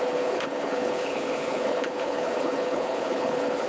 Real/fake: fake